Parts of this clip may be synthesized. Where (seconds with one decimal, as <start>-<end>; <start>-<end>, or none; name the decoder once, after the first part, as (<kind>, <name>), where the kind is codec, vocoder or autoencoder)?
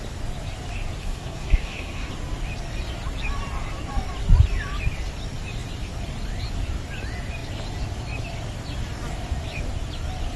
1.0-2.1 (codec, SNAC)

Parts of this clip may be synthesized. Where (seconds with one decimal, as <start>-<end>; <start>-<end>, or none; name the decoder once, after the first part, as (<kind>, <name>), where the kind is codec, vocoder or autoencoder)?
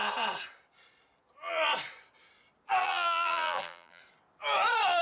2.8-4.0 (vocoder, BigVGAN v2)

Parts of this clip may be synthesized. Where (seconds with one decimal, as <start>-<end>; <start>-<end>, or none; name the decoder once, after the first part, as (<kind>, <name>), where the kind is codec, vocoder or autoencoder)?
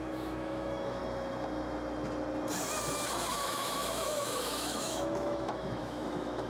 0.0-1.0 (autoencoder, DAC-VAE); 3.3-6.5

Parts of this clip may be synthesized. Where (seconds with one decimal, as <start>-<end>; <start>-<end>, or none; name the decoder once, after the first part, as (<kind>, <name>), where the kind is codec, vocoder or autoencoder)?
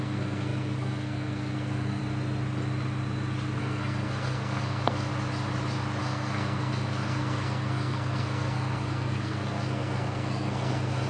0.0-2.0 (codec, SNAC); 3.6-5.1; 6.0-11.1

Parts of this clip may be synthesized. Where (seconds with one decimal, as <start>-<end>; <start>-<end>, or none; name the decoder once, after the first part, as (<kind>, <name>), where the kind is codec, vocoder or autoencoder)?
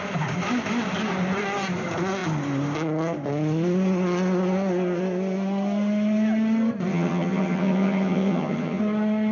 6.9-8.8 (vocoder, HiFi-GAN)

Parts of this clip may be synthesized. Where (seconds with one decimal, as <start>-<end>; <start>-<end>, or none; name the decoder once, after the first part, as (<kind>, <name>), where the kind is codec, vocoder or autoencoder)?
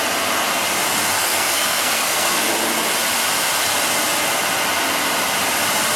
1.2-2.5 (codec, SNAC)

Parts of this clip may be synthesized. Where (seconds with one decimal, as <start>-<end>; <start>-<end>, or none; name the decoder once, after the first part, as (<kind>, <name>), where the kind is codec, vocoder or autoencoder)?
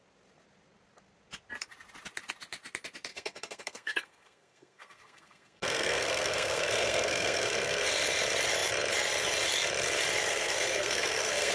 3.1-7.9 (codec, SNAC); 10.3-11.5